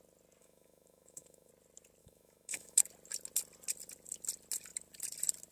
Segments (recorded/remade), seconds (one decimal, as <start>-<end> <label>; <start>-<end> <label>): 0.0-0.4 recorded; 0.4-1.5 remade; 1.5-2.0 recorded; 2.0-2.8 remade; 2.8-5.5 recorded